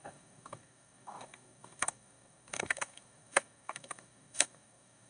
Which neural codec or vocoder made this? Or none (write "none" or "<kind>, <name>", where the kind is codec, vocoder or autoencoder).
codec, DAC